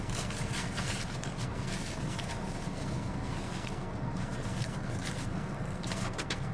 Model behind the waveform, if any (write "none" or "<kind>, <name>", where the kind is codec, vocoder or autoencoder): codec, SNAC